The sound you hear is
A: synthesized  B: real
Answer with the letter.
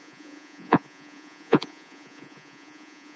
A